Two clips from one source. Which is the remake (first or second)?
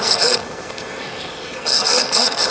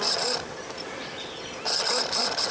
first